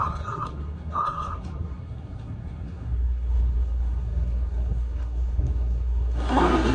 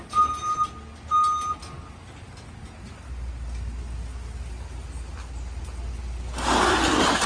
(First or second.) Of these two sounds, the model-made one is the first